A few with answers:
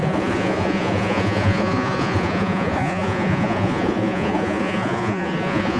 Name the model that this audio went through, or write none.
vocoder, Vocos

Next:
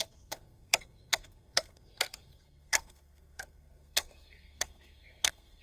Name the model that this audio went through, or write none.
codec, SNAC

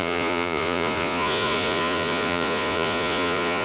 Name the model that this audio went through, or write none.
vocoder, Vocos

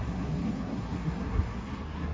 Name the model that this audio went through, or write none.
codec, SNAC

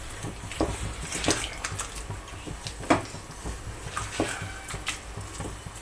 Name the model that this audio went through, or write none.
none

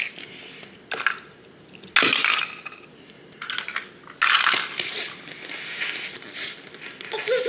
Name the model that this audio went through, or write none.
none